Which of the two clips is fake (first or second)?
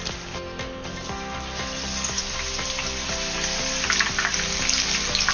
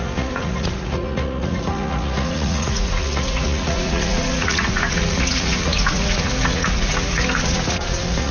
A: second